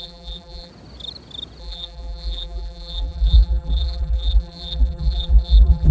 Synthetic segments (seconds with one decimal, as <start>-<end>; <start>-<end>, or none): 0.0-0.7; 1.6-5.9